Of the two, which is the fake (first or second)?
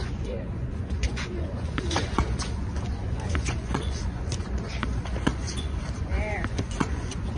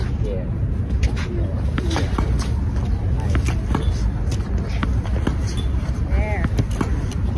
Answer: first